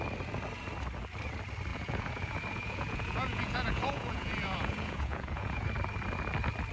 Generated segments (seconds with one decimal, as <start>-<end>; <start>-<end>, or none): 1.7-5.7